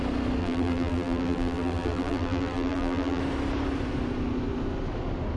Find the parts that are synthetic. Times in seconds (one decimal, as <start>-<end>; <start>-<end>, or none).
0.4-3.2